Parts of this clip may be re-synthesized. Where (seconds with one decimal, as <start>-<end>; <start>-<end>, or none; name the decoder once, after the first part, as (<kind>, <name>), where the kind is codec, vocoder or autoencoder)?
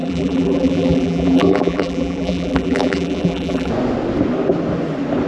0.0-3.7 (vocoder, BigVGAN v2)